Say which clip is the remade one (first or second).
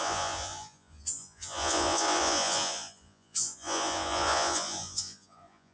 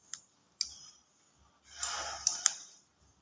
first